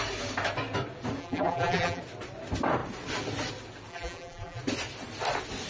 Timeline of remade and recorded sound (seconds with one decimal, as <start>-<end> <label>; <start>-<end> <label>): 0.0-1.2 recorded; 1.2-2.0 remade; 2.0-3.9 recorded; 3.9-4.6 remade; 4.6-5.7 recorded